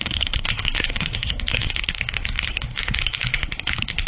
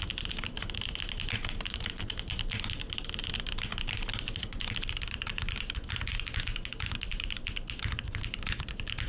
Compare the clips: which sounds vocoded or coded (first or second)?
first